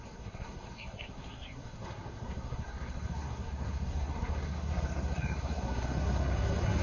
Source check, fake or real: fake